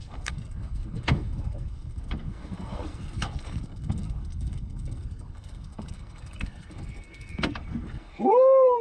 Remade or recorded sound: remade